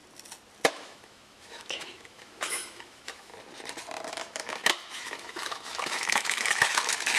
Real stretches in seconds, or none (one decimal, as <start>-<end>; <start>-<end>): 0.0-0.7; 3.3-4.1